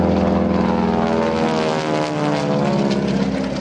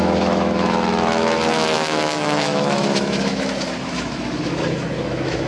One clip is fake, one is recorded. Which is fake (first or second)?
second